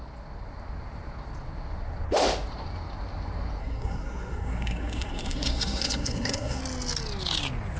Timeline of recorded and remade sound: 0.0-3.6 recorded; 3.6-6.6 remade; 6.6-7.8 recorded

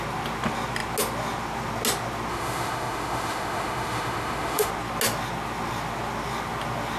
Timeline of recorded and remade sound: 0.0-2.3 recorded; 2.3-4.7 remade; 4.7-7.0 recorded

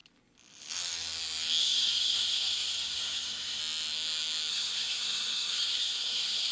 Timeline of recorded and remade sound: 0.0-1.6 recorded; 1.6-3.6 remade; 3.6-4.5 recorded; 4.5-6.5 remade

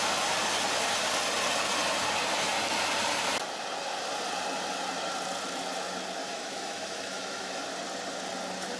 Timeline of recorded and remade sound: 0.0-6.2 recorded; 6.2-7.6 remade; 7.6-8.8 recorded